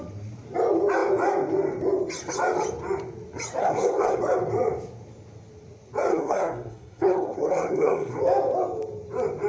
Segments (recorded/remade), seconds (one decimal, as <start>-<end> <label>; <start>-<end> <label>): 0.0-3.6 recorded; 3.6-4.2 remade; 4.2-6.1 recorded; 6.1-8.2 remade; 8.2-9.5 recorded